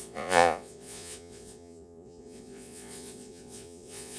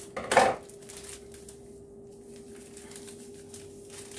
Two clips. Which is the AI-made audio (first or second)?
first